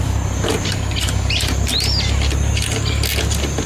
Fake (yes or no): no